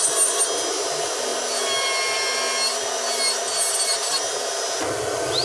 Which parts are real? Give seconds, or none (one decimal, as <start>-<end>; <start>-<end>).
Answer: 0.0-5.4